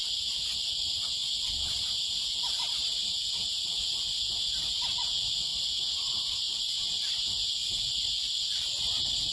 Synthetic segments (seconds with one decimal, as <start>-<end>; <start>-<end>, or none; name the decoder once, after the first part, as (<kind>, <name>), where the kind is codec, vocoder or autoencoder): 5.5-6.6 (vocoder, BigVGAN v2)